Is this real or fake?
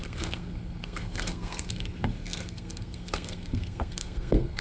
fake